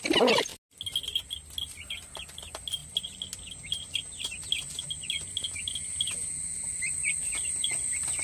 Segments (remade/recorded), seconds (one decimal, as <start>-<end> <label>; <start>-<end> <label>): 0.0-8.2 recorded